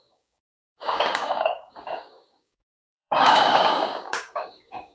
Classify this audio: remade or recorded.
remade